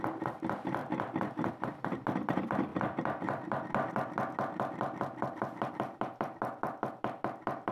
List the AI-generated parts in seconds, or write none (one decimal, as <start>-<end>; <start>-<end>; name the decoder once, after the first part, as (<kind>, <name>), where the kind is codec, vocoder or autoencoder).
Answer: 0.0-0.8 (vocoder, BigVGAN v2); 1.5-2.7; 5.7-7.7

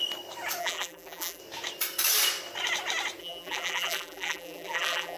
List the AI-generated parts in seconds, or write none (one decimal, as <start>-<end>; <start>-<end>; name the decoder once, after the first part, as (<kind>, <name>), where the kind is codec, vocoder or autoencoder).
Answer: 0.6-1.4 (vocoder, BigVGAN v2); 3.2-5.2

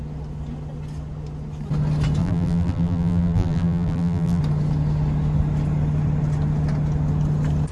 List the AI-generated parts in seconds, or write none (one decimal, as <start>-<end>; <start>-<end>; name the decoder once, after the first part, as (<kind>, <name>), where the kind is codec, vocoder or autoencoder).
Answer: 2.2-4.4 (vocoder, BigVGAN v2)

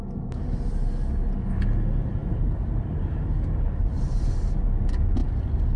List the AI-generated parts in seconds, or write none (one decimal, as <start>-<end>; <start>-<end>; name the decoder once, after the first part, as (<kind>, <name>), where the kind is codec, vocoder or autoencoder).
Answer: 2.2-4.6 (vocoder, BigVGAN v2)

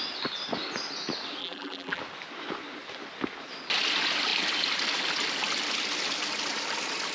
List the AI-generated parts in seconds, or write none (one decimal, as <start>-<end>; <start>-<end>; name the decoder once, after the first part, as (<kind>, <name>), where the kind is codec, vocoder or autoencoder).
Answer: 1.4-2.0 (vocoder, BigVGAN v2)

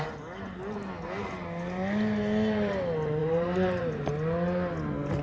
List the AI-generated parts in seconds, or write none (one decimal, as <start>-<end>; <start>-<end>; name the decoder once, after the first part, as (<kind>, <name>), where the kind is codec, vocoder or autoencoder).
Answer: 3.2-4.1 (vocoder, BigVGAN v2)